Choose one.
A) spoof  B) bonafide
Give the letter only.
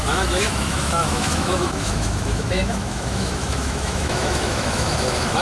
A